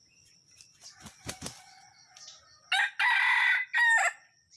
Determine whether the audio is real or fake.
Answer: real